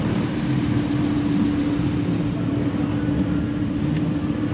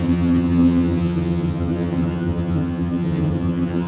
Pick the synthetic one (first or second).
second